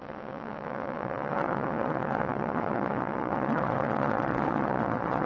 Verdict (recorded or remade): remade